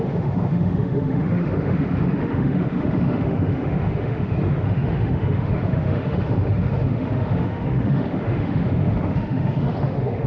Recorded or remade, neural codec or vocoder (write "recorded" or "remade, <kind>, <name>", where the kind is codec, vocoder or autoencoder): remade, autoencoder, DAC-VAE